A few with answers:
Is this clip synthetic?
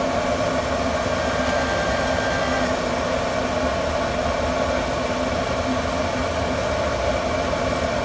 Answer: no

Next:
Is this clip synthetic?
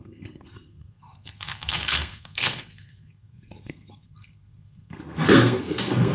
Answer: yes